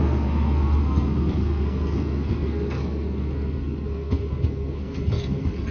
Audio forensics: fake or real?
fake